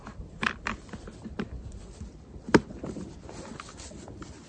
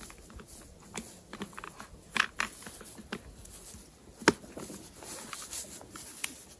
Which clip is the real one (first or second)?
second